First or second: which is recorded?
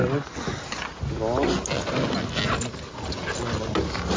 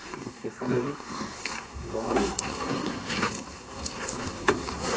first